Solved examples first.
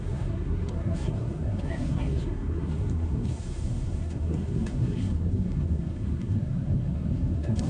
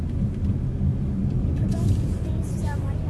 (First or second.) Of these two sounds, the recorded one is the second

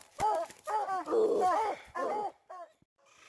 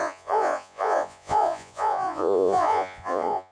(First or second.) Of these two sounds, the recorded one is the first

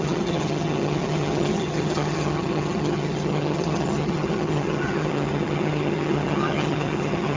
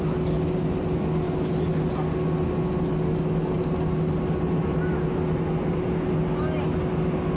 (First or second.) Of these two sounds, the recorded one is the second